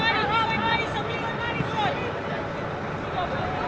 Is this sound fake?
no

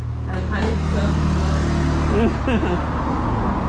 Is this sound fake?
no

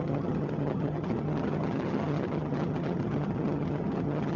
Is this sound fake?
yes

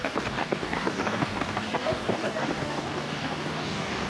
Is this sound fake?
yes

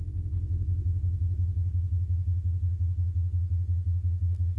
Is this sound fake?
no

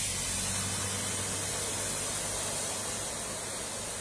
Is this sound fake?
no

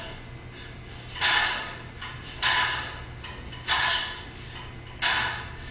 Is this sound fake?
no